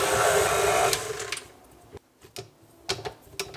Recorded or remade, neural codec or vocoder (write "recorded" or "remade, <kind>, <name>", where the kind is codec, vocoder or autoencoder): recorded